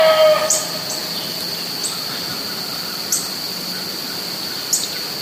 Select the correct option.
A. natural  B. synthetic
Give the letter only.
A